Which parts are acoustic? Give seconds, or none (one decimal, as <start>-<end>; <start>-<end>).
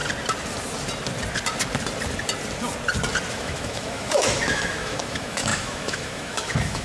0.0-3.3